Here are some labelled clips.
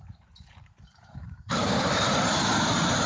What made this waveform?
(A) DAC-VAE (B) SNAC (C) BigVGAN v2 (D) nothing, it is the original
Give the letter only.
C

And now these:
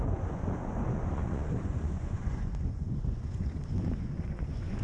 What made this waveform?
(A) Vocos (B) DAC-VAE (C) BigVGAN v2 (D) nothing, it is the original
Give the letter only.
A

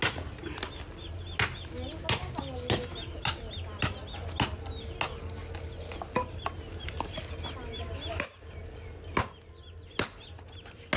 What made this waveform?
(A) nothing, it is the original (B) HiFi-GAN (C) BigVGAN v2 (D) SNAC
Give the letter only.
A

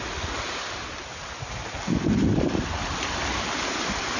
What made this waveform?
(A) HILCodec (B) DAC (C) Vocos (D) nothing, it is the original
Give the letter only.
D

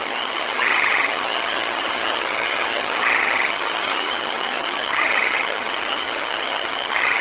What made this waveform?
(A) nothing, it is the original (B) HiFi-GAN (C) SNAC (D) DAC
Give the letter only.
B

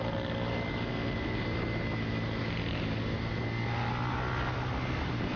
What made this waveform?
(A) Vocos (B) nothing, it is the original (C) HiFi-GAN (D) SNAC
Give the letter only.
B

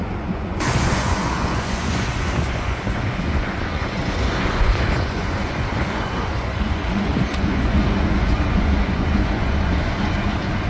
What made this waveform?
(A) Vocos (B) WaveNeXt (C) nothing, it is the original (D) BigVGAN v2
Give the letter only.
A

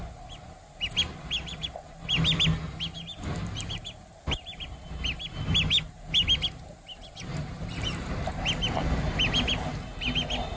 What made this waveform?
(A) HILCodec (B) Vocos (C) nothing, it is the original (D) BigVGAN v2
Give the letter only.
C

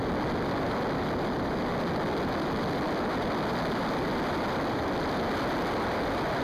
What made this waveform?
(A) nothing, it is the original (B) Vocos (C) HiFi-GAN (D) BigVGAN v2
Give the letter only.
A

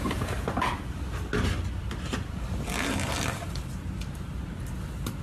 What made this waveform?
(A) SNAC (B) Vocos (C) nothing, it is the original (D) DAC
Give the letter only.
C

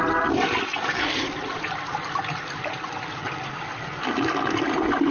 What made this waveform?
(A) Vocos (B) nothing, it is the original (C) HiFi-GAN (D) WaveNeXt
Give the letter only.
B